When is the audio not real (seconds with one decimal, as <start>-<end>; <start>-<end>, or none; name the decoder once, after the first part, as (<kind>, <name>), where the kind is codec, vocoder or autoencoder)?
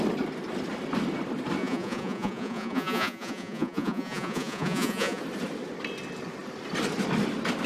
1.6-5.2 (vocoder, Vocos)